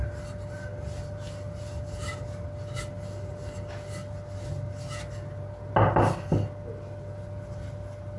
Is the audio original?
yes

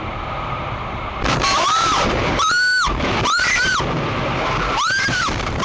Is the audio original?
no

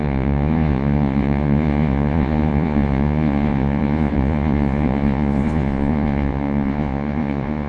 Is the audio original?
no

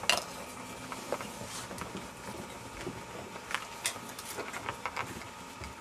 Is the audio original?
yes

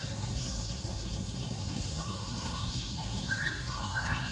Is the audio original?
no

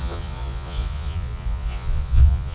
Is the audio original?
no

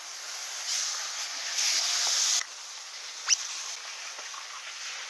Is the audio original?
yes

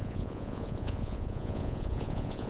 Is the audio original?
no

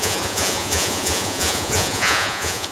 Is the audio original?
no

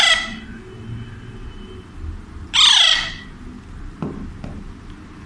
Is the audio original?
yes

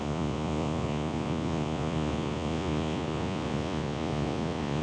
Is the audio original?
no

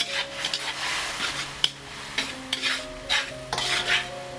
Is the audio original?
yes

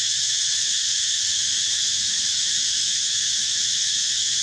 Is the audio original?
no